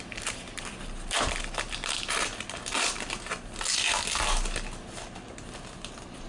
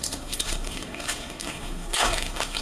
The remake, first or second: second